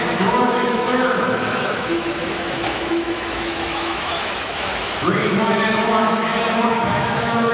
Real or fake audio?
fake